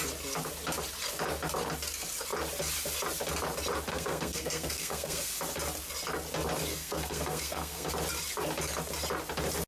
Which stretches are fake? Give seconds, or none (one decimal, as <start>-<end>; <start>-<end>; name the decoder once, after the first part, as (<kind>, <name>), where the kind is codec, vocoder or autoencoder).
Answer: 3.9-5.3 (codec, SNAC); 6.7-7.9